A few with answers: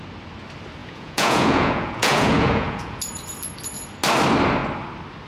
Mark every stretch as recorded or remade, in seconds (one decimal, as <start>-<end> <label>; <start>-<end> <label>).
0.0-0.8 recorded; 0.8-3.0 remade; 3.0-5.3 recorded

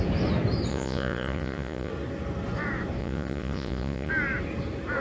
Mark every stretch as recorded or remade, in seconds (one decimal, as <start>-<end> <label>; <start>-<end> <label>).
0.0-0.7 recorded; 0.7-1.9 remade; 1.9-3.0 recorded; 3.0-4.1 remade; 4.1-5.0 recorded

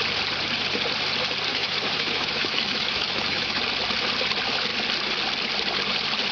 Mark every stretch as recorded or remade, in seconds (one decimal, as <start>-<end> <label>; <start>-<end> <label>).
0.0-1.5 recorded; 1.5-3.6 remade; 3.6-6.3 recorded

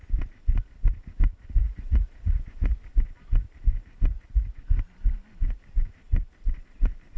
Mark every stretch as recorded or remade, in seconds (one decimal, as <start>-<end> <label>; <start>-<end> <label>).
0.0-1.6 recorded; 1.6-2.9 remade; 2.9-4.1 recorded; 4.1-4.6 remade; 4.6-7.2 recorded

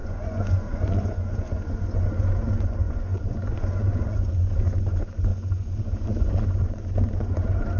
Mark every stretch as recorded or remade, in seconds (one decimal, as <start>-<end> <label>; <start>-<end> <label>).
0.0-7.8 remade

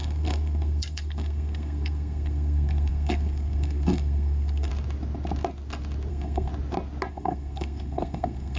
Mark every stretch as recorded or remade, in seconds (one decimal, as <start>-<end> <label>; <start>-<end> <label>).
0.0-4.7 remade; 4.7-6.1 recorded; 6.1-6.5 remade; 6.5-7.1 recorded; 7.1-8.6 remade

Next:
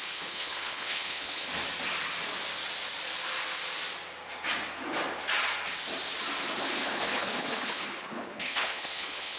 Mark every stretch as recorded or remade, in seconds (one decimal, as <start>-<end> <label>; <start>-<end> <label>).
0.0-1.5 remade; 1.5-6.6 recorded; 6.6-9.4 remade